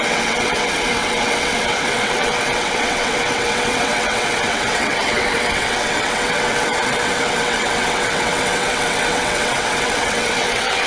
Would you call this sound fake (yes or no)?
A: yes